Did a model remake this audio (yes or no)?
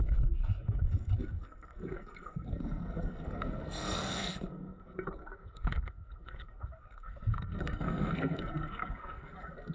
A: yes